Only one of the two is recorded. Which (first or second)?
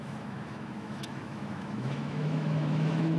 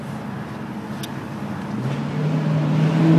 second